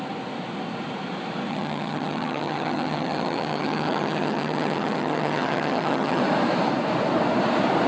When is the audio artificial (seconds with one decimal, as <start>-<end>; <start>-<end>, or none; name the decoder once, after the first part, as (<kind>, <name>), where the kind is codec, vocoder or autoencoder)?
1.5-6.2 (vocoder, HiFi-GAN)

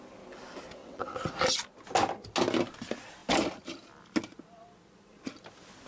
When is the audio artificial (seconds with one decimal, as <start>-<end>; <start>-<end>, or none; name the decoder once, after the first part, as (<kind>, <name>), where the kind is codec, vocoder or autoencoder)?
0.8-1.3 (vocoder, WaveNeXt)

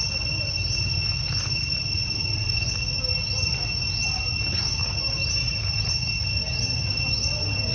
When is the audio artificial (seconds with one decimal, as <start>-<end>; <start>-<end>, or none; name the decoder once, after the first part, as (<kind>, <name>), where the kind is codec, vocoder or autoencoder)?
1.9-2.6 (vocoder, WaveNeXt)

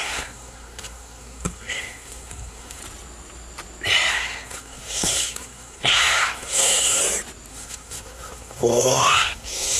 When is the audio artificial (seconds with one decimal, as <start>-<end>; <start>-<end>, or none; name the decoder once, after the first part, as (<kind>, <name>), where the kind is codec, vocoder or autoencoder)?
0.0-2.8 (codec, SNAC); 4.1-7.0; 7.5-9.8